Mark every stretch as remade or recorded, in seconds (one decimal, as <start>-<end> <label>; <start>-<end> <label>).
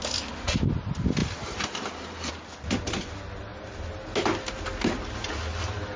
0.0-6.0 recorded